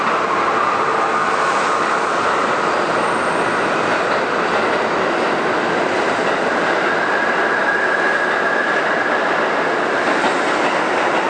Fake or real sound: real